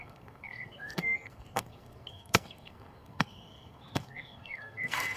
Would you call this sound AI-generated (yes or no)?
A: yes